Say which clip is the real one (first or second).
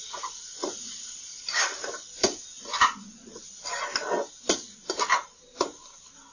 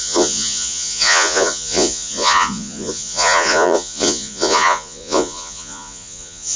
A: first